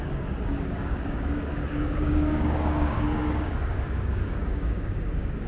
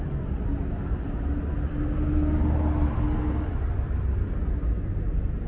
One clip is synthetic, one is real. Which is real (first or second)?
second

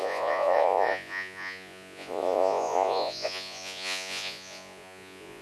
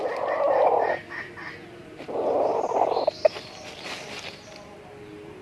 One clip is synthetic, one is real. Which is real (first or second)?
second